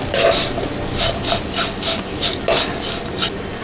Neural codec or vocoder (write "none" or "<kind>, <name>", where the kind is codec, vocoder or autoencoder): none